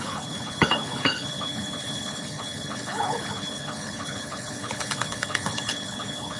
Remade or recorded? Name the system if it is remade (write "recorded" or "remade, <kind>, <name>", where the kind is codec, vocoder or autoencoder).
remade, codec, HILCodec